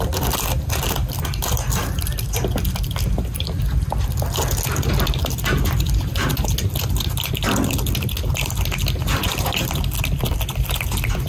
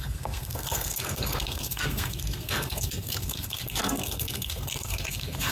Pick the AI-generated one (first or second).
second